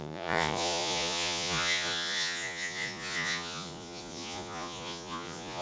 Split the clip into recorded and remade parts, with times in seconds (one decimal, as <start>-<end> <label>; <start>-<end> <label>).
0.0-5.6 remade